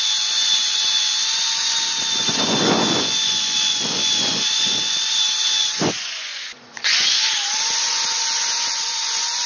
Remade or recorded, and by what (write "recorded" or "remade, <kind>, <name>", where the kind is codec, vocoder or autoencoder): remade, vocoder, Vocos